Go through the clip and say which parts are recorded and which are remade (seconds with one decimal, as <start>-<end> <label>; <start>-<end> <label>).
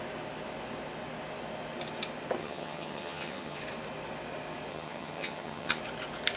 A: 0.0-2.4 recorded; 2.4-3.6 remade; 3.6-4.7 recorded; 4.7-5.8 remade; 5.8-6.4 recorded